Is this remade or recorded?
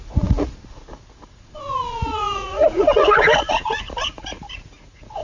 remade